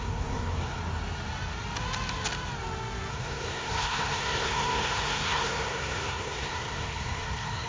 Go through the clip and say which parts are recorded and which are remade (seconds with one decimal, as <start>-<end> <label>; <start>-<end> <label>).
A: 0.0-0.8 remade; 0.8-3.1 recorded; 3.1-7.7 remade